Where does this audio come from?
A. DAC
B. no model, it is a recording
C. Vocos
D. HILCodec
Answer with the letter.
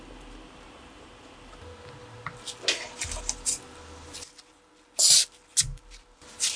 B